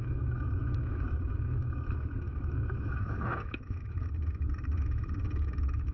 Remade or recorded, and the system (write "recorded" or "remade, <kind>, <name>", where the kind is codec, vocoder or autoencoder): remade, autoencoder, DAC-VAE